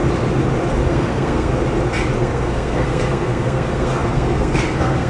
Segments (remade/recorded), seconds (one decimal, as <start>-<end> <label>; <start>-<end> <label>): 0.0-0.9 recorded; 0.9-1.5 remade; 1.5-2.2 recorded; 2.2-5.1 remade